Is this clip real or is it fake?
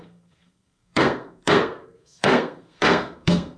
fake